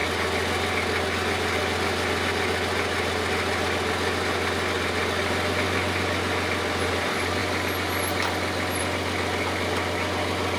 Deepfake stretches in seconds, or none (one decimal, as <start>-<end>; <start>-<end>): none